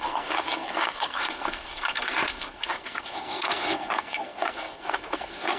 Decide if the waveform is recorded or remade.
remade